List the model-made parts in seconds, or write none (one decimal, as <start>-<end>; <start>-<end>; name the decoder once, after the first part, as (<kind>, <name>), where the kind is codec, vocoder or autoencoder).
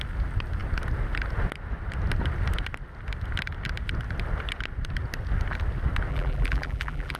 6.1-7.2 (vocoder, BigVGAN v2)